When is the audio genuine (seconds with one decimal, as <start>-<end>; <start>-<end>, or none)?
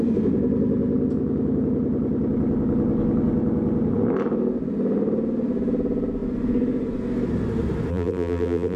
0.0-7.9